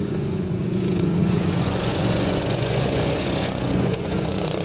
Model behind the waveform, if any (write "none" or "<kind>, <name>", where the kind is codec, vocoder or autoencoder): vocoder, Vocos